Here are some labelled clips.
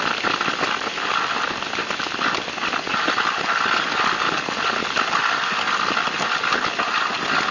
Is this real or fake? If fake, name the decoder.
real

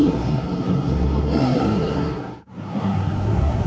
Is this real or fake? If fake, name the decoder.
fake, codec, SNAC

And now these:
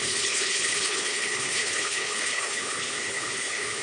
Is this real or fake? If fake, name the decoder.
fake, codec, HILCodec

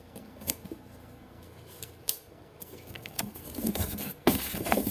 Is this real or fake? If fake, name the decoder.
fake, codec, SNAC